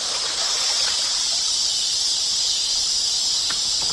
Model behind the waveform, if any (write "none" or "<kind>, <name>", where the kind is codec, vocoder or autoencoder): vocoder, BigVGAN v2